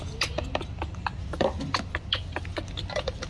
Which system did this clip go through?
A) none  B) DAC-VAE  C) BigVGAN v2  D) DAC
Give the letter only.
A